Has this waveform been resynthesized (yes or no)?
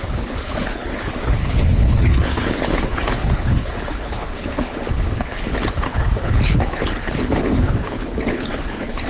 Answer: yes